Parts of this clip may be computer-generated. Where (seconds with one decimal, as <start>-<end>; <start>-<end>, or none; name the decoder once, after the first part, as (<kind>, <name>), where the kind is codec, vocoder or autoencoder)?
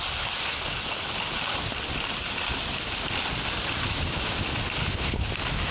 4.8-5.3 (codec, HILCodec)